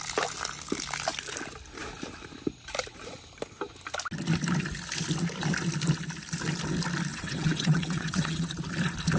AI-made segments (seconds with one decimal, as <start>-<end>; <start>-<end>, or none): 7.1-8.5